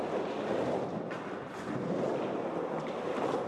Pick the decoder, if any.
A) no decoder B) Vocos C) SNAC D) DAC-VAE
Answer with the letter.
A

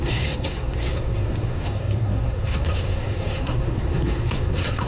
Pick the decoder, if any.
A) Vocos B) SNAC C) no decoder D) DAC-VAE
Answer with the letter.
B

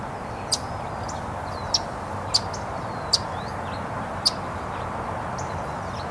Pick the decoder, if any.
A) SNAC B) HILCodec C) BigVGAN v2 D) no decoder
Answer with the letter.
D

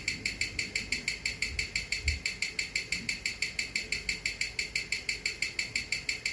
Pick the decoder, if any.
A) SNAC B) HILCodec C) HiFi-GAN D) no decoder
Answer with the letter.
D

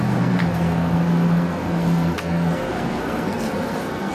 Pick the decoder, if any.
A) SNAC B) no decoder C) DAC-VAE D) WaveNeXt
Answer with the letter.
A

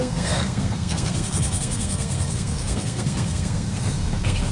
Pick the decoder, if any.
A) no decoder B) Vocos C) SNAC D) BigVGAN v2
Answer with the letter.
C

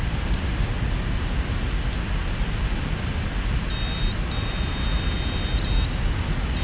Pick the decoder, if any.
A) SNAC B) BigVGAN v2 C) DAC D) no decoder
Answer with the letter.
D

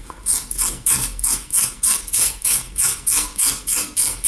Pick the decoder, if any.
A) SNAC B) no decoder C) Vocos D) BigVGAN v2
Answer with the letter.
A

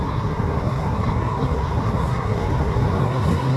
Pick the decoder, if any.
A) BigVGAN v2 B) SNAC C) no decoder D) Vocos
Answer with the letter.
B